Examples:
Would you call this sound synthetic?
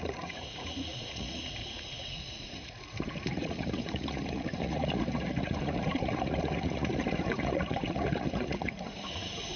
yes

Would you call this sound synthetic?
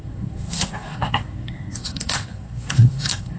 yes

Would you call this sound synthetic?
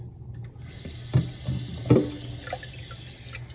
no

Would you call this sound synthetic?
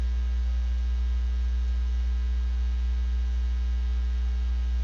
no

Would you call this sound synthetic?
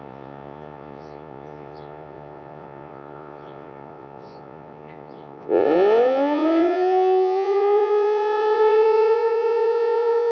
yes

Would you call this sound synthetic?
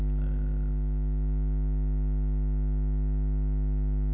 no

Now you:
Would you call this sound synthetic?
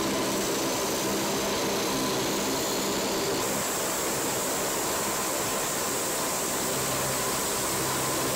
no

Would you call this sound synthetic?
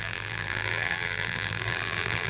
yes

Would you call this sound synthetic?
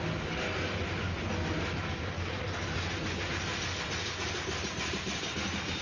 no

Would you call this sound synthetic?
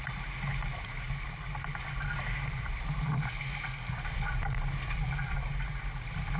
no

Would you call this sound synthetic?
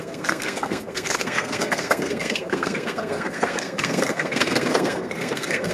yes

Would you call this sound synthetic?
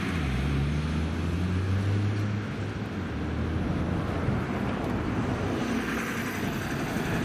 no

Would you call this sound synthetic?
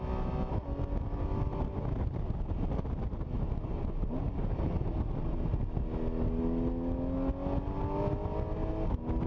no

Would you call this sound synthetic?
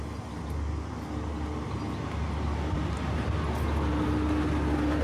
no